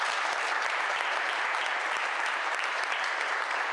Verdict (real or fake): fake